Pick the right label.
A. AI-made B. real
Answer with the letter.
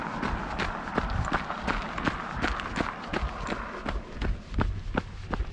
B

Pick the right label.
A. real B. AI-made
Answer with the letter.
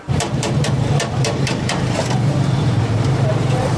B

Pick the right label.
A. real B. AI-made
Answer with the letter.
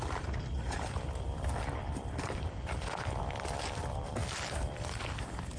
A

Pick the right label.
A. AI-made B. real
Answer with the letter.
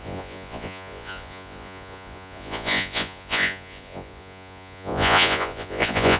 A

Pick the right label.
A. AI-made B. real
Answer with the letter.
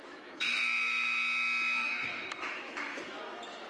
A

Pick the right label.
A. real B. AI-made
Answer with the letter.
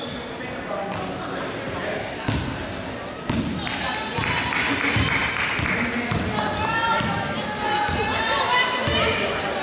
A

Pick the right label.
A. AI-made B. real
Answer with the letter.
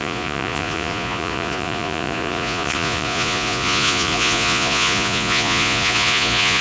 A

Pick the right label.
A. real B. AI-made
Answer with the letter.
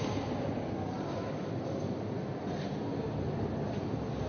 A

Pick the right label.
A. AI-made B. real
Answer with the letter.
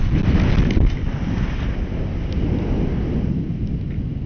B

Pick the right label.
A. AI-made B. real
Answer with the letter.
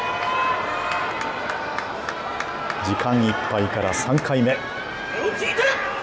B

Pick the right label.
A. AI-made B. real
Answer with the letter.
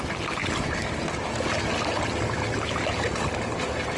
B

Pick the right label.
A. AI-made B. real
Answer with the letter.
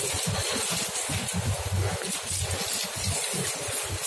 B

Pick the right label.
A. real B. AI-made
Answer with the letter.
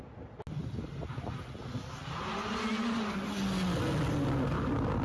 A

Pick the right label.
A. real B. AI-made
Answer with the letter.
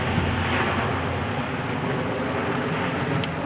A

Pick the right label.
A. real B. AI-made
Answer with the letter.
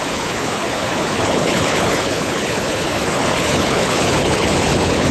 B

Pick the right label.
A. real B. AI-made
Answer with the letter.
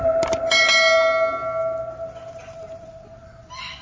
A